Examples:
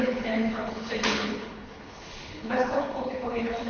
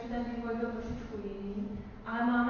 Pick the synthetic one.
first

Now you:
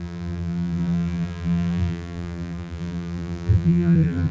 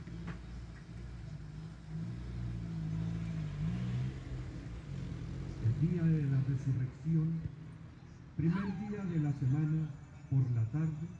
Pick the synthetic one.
first